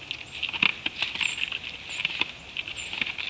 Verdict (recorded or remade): recorded